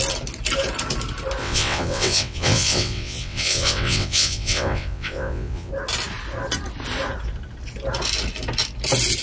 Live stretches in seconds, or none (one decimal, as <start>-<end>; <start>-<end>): 0.0-1.4; 5.7-9.2